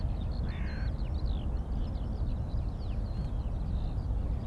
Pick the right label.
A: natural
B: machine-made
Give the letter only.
A